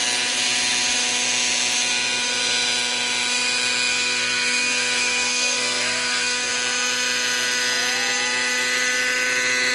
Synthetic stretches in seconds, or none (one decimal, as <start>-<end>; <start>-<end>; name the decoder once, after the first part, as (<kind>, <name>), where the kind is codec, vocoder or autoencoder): 3.9-6.5 (codec, SNAC)